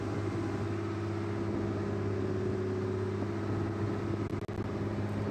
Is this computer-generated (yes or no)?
no